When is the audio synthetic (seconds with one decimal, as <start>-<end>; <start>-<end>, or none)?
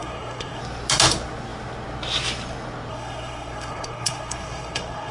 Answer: 0.0-0.6; 2.9-5.1